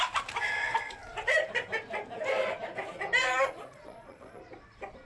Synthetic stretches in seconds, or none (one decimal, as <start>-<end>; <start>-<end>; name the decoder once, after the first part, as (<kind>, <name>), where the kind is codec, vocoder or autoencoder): 3.3-4.4 (vocoder, Vocos)